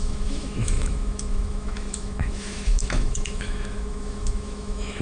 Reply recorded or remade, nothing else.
remade